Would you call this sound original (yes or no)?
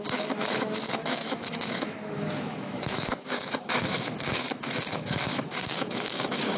no